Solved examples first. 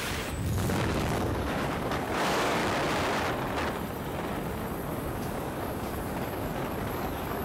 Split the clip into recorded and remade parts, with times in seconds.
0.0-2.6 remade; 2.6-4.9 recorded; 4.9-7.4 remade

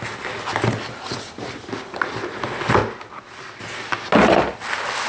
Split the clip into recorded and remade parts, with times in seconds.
0.0-5.1 recorded

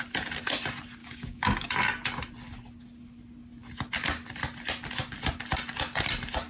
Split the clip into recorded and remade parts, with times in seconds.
0.0-1.0 recorded; 1.0-1.7 remade; 1.7-6.5 recorded